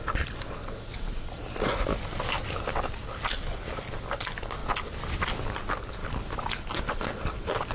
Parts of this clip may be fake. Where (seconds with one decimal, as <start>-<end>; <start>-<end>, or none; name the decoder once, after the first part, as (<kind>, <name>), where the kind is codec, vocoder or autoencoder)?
none